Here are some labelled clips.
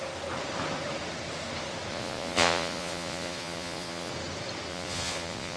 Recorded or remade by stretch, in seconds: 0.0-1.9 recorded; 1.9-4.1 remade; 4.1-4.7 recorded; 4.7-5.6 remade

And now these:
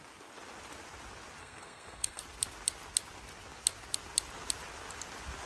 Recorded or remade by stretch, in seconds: 0.0-1.4 recorded; 1.4-2.2 remade; 2.2-5.5 recorded

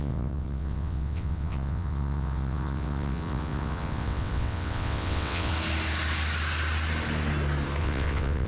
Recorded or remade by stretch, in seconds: 0.0-5.5 remade; 5.5-7.8 recorded; 7.8-8.5 remade

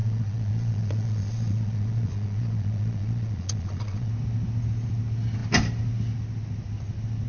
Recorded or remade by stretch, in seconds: 0.0-4.1 remade; 4.1-7.3 recorded

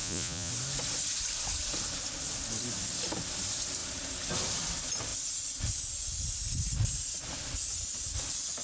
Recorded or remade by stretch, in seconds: 0.0-0.5 remade; 0.5-8.6 recorded

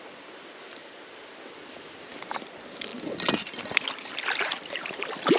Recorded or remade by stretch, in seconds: 0.0-5.4 recorded